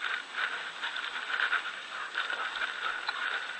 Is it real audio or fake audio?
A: real